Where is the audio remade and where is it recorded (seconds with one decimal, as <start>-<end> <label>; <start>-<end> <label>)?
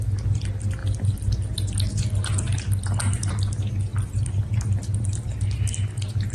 0.0-3.9 recorded; 3.9-5.3 remade; 5.3-6.3 recorded